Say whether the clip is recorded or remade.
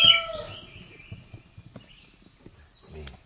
recorded